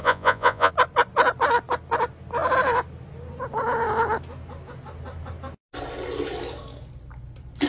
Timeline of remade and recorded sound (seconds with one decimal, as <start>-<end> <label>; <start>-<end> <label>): 0.0-0.7 remade; 0.7-7.7 recorded